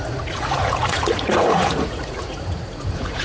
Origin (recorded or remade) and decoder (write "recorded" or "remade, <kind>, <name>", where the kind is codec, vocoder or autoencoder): remade, vocoder, Vocos